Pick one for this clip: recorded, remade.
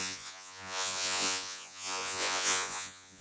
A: remade